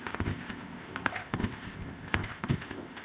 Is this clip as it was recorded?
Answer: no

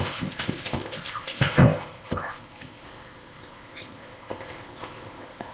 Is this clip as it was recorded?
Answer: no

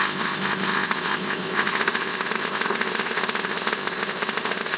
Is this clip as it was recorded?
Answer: no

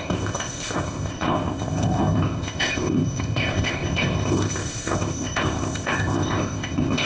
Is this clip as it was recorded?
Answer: no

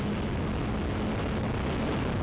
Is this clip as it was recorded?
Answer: yes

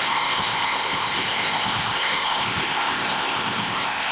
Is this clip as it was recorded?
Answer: no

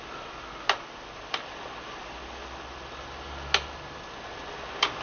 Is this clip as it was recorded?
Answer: yes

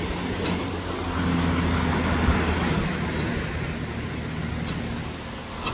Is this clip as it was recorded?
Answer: yes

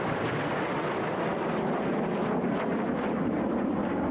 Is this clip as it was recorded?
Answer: yes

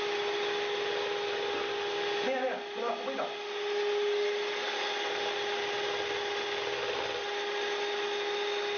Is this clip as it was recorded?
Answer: yes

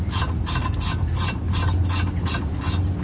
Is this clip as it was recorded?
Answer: yes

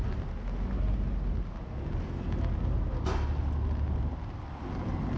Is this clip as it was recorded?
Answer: yes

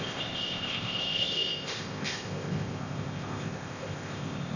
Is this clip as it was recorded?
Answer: no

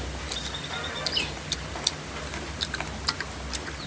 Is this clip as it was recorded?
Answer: yes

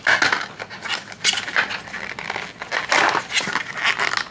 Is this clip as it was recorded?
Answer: yes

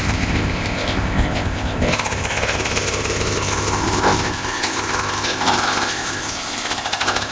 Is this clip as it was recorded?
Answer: no